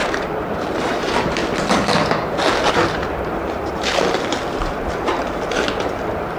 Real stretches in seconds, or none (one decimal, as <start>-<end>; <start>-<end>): 1.4-3.2